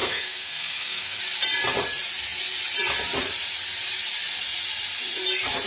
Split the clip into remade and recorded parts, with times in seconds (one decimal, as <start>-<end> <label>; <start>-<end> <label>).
0.0-1.2 remade; 1.2-5.7 recorded